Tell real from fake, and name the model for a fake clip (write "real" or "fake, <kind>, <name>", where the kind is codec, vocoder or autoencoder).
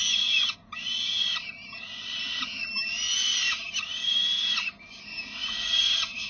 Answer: real